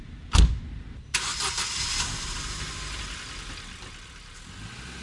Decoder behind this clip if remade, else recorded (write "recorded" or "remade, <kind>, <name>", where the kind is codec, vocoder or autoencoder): recorded